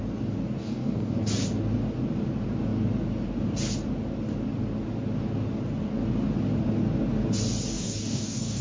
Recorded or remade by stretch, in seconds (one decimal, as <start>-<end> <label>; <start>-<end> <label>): 0.0-0.6 recorded; 0.6-1.2 remade; 1.2-7.7 recorded; 7.7-8.6 remade